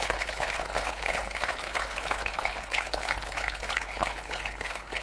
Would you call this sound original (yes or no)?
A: no